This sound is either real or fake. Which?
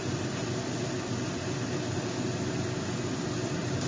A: real